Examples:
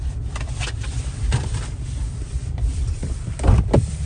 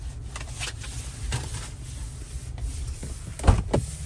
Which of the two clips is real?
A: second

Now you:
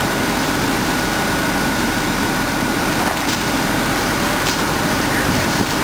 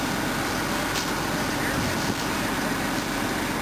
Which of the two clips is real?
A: second